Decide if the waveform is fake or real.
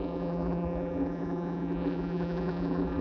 fake